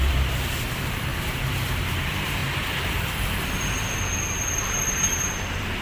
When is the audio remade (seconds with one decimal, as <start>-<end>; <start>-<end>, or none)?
0.0-1.1; 1.9-2.4; 4.9-5.8